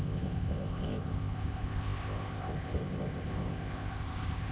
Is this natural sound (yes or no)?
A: no